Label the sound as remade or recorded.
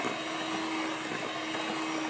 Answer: recorded